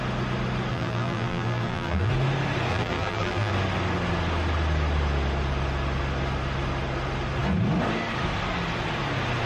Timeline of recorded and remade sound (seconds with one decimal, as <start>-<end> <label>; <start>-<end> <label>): 0.0-0.7 recorded; 0.7-2.1 remade; 2.1-2.7 recorded; 2.7-3.5 remade; 3.5-9.5 recorded